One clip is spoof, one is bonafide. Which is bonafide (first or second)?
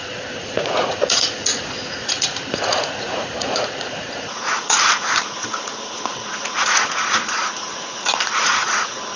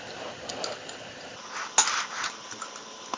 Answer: second